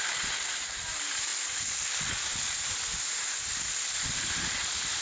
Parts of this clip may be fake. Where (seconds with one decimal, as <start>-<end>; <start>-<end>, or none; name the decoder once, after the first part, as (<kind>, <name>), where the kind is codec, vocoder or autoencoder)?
none